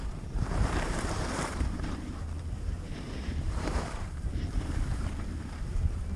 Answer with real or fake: fake